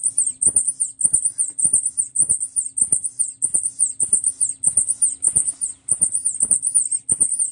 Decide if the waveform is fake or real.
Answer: real